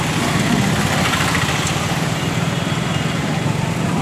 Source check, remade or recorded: remade